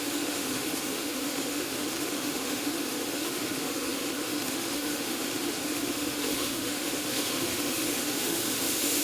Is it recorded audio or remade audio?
remade